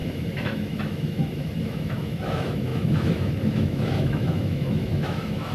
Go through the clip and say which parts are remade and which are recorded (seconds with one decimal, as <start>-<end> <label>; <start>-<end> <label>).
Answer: 0.0-5.5 remade